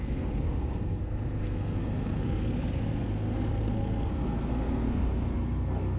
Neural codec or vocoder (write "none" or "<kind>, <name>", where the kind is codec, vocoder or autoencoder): codec, SNAC